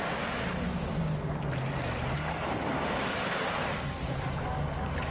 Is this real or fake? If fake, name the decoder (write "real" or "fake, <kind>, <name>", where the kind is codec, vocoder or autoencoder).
real